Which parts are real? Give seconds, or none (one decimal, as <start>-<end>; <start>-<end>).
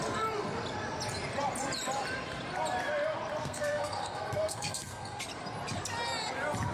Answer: 0.0-3.4; 5.2-6.7